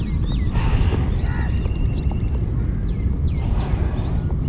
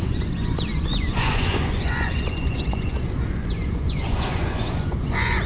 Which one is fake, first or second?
second